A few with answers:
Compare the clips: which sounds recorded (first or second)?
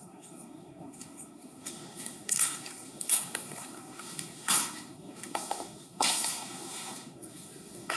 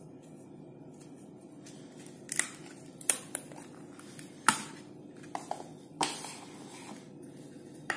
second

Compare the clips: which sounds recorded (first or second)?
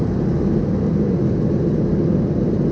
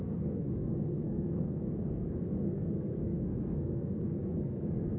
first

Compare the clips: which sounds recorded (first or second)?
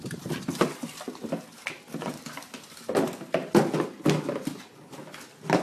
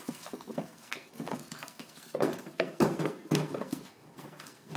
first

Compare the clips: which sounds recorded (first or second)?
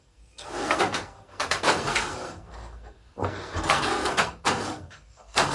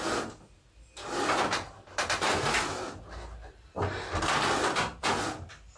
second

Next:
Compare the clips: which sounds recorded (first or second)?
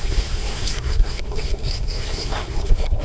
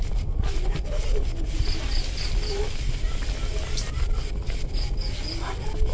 second